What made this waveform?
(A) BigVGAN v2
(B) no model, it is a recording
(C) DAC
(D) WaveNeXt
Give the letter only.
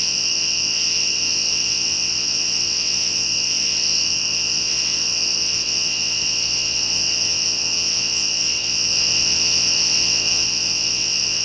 D